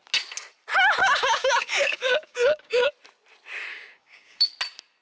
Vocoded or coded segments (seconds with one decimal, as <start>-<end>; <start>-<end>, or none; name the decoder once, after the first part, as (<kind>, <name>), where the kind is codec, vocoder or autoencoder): 1.0-2.9 (codec, DAC); 3.7-4.5